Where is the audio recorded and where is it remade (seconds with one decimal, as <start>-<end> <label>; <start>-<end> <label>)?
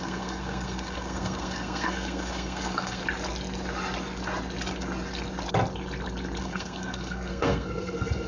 0.0-3.0 remade; 3.0-6.4 recorded; 6.4-8.3 remade